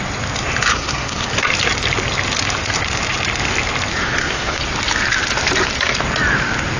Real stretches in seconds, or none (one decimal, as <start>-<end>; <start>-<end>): 0.0-0.7; 1.3-4.0; 4.6-6.8